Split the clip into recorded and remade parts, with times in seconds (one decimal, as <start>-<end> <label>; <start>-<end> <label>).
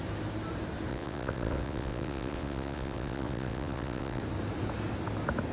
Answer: 0.0-0.9 recorded; 0.9-4.2 remade; 4.2-5.5 recorded